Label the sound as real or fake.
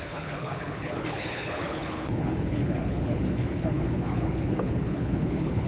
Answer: fake